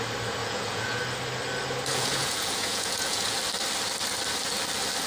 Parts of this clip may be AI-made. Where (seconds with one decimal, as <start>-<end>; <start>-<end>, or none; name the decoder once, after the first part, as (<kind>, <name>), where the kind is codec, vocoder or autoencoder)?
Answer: 0.4-1.0 (vocoder, Vocos); 1.9-3.4

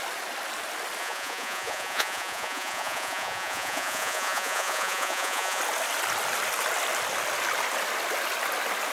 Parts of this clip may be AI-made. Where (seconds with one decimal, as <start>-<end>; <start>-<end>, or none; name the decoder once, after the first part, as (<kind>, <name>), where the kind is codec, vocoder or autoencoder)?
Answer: 1.0-5.6 (vocoder, Vocos)

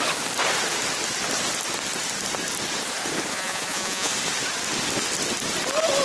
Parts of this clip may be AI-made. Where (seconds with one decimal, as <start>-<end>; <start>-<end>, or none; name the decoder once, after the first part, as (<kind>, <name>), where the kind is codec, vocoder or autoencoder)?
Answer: 3.3-4.1 (vocoder, Vocos)

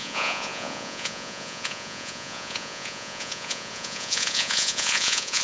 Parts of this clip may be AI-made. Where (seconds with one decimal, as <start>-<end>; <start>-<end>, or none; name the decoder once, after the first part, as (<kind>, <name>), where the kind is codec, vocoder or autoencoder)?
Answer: 0.0-5.4 (vocoder, Vocos)

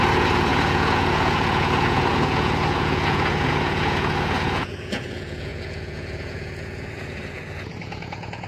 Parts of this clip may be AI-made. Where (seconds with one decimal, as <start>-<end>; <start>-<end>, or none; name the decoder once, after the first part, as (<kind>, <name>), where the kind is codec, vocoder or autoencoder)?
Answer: 0.0-8.5 (vocoder, Vocos)

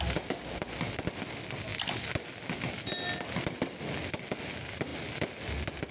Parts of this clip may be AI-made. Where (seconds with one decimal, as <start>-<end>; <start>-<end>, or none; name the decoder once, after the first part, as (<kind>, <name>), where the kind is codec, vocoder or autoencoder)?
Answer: none